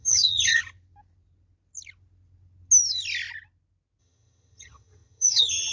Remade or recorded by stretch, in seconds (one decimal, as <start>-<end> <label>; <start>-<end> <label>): 0.0-0.6 remade; 0.6-4.0 recorded; 4.0-5.7 remade